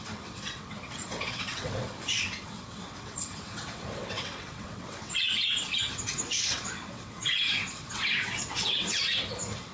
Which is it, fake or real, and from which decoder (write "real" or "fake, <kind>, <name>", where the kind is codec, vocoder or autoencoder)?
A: fake, vocoder, WaveNeXt